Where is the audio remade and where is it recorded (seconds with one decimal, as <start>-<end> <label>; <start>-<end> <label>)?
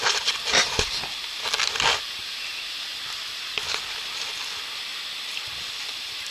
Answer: 0.0-6.3 recorded